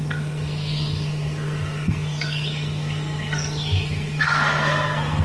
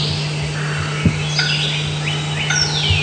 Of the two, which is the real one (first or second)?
second